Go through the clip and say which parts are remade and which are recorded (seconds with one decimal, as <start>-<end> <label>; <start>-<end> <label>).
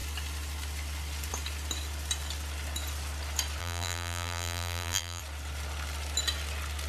0.0-3.6 recorded; 3.6-5.2 remade; 5.2-6.9 recorded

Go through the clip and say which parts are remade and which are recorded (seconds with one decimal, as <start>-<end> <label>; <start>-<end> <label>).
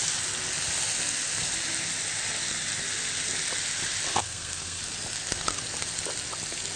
0.0-4.1 recorded; 4.1-4.8 remade; 4.8-6.8 recorded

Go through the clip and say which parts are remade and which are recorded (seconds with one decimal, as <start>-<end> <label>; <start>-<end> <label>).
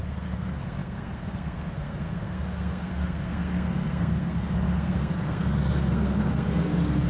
0.0-7.1 remade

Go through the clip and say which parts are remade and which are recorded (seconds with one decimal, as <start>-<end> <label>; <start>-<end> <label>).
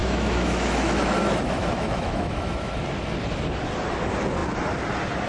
0.0-2.7 remade; 2.7-5.3 recorded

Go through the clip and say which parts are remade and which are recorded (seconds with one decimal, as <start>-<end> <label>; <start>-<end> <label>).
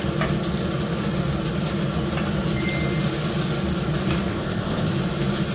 0.0-4.3 recorded; 4.3-4.9 remade; 4.9-5.5 recorded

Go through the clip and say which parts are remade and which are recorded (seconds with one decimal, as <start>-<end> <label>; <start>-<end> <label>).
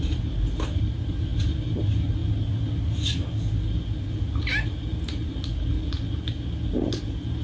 0.0-7.4 recorded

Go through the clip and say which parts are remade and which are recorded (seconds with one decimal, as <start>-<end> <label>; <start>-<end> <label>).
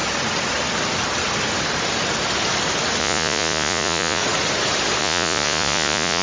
0.0-3.0 recorded; 3.0-4.2 remade; 4.2-5.0 recorded; 5.0-6.2 remade